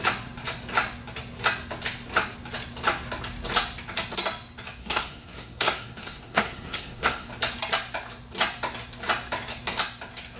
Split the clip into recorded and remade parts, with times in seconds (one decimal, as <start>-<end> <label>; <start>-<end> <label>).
0.0-4.8 recorded; 4.8-7.3 remade; 7.3-10.4 recorded

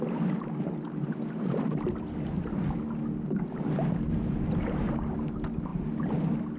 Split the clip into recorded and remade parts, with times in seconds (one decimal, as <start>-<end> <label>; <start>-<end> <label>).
0.0-6.6 recorded